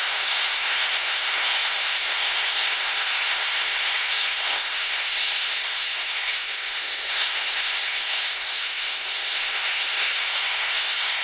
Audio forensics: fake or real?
fake